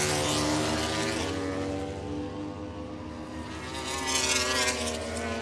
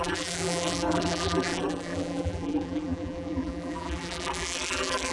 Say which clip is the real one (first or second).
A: first